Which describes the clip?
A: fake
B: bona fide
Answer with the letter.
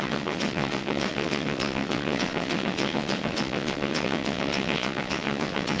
A